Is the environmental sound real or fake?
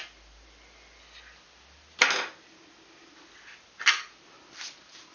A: real